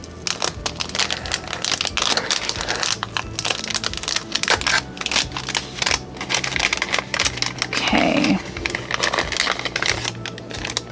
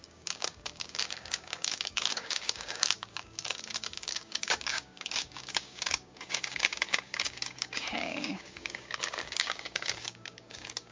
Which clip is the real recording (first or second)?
first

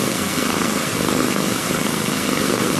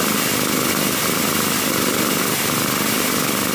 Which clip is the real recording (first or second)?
second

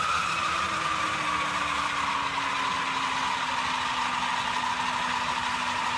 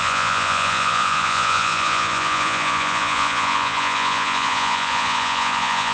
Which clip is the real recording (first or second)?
first